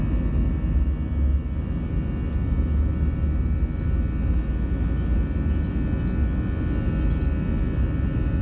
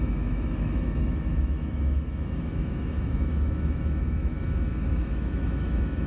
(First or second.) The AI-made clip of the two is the second